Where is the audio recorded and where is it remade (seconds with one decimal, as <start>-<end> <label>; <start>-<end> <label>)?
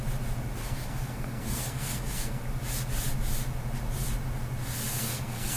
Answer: 0.0-0.6 recorded; 0.6-2.4 remade; 2.4-4.9 recorded; 4.9-5.6 remade